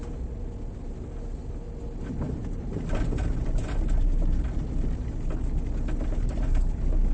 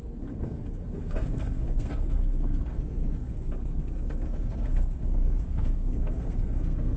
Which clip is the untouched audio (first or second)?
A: first